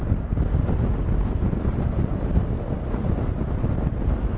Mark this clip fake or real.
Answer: real